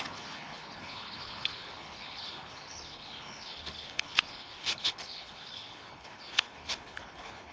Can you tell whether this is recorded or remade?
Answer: remade